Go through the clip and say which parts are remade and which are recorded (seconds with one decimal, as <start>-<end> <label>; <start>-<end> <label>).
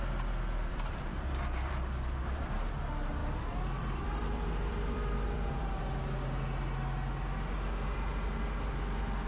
0.0-0.7 recorded; 0.7-2.7 remade; 2.7-3.2 recorded; 3.2-5.8 remade; 5.8-9.3 recorded